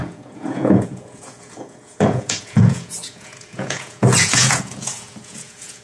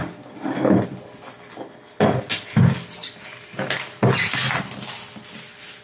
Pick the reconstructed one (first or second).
first